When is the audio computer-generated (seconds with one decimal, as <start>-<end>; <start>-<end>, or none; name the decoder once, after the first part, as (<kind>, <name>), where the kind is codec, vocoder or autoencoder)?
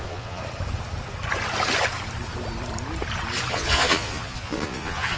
0.0-0.4 (vocoder, Vocos); 3.5-5.2